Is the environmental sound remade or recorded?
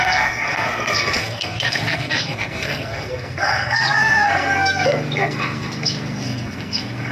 remade